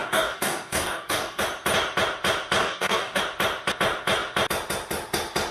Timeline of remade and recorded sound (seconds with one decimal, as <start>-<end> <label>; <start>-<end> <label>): 0.0-1.4 remade; 1.4-2.6 recorded; 2.6-3.2 remade; 3.2-5.5 recorded